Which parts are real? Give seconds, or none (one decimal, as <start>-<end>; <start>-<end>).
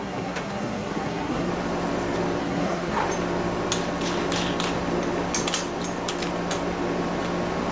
1.5-2.4; 3.0-7.7